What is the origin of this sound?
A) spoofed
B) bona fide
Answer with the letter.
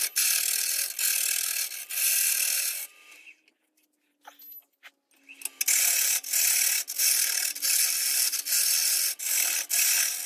B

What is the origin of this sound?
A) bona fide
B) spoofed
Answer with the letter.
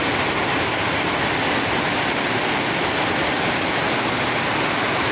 A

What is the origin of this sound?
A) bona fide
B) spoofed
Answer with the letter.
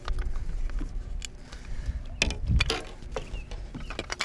A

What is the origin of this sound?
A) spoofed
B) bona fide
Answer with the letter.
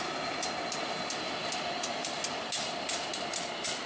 B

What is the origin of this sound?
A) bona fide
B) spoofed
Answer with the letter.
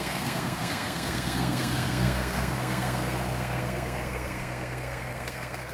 B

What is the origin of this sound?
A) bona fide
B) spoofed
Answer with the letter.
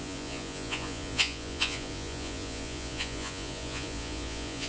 B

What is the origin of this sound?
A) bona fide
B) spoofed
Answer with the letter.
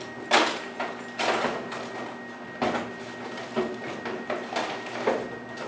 A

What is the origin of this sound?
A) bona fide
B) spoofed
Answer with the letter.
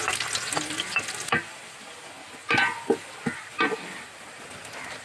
A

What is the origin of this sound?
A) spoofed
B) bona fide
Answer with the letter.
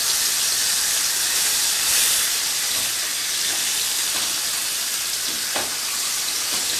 B